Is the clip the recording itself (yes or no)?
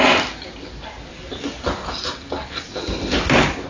yes